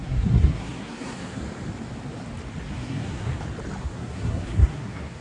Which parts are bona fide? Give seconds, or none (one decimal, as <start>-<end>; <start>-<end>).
1.4-2.7; 3.3-3.8